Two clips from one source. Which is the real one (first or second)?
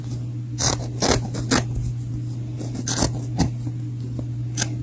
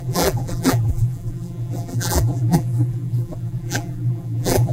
first